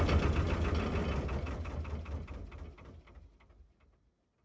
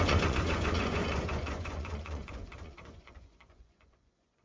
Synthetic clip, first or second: second